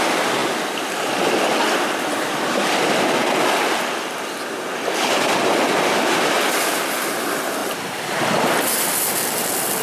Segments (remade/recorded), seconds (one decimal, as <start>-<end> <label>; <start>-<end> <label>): 0.0-9.8 recorded